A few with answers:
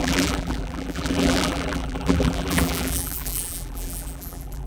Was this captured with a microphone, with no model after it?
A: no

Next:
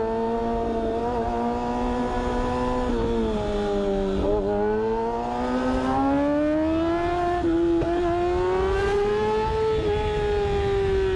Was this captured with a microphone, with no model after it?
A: yes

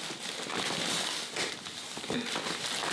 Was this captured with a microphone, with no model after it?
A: yes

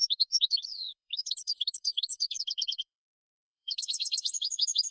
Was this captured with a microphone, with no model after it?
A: no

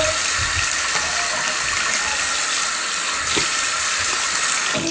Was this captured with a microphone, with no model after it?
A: yes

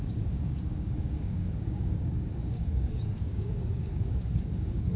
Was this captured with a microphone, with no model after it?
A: no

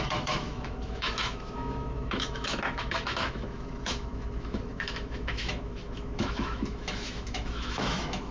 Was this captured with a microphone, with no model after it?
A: no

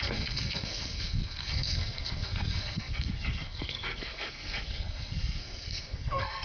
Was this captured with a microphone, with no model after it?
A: no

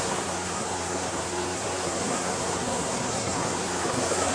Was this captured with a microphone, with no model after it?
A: no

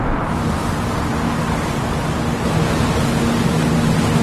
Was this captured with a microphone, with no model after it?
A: yes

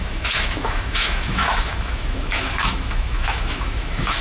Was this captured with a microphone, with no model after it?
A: no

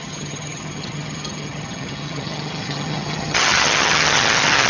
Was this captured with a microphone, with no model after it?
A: no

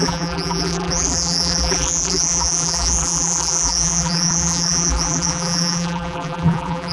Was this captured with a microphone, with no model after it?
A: no